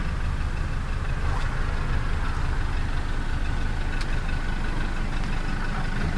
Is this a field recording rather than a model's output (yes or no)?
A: yes